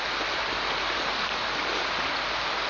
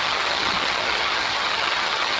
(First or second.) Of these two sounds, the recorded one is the first